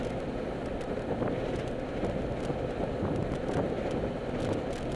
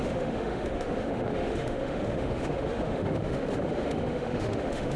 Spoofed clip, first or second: second